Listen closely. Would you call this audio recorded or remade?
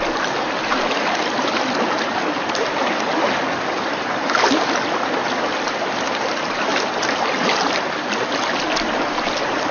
recorded